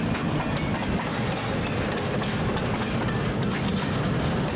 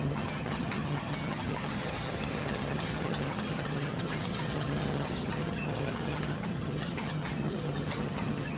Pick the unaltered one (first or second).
first